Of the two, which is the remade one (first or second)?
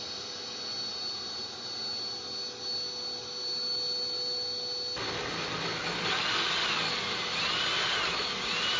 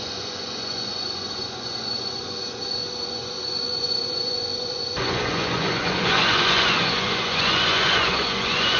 second